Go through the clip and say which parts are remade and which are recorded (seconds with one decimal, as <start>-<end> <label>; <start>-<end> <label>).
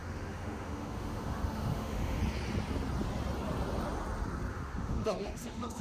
0.0-2.2 remade; 2.2-4.5 recorded; 4.5-5.8 remade